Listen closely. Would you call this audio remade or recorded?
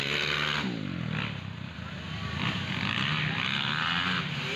recorded